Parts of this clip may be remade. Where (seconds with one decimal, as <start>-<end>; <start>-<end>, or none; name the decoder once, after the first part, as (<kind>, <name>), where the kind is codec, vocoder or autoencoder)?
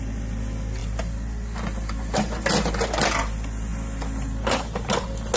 none